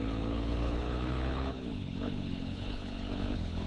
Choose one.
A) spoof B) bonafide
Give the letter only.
A